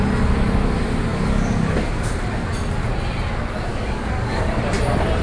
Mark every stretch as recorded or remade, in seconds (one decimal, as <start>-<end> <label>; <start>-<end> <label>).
0.0-1.1 recorded; 1.1-2.1 remade; 2.1-3.7 recorded; 3.7-4.6 remade; 4.6-5.2 recorded